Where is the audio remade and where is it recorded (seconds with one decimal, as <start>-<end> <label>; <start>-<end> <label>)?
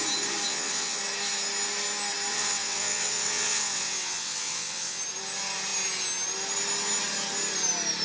0.0-0.5 recorded; 0.5-1.0 remade; 1.0-2.3 recorded; 2.3-5.0 remade; 5.0-8.0 recorded